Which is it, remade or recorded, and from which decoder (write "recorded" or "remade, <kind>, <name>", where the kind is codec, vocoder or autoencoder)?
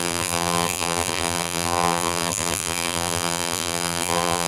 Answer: remade, vocoder, BigVGAN v2